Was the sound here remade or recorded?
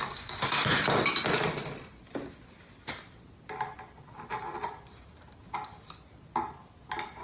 recorded